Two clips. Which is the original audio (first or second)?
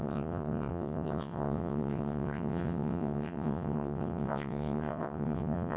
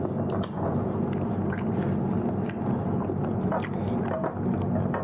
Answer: second